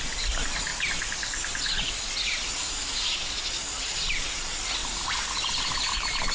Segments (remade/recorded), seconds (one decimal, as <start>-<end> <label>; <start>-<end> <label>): 0.0-2.6 recorded; 2.6-3.3 remade; 3.3-6.3 recorded